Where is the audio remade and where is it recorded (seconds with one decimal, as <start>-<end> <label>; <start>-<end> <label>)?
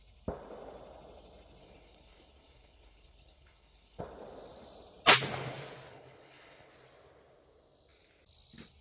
0.0-1.6 recorded; 1.6-4.0 remade; 4.0-5.9 recorded; 5.9-6.7 remade; 6.7-8.8 recorded